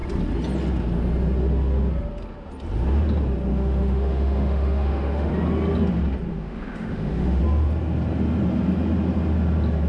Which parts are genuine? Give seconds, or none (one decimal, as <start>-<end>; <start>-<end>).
0.0-3.5; 5.3-6.3; 7.4-9.9